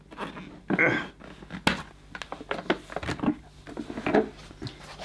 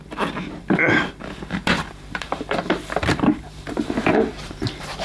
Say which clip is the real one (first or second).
first